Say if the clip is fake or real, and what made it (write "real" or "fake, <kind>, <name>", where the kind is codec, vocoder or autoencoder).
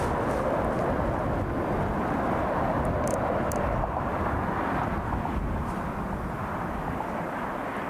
real